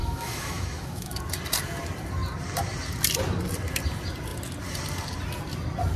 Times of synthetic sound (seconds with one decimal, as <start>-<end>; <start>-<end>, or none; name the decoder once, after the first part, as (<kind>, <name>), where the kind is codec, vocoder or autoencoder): 0.0-1.2 (autoencoder, DAC-VAE)